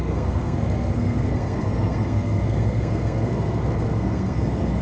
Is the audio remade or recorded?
remade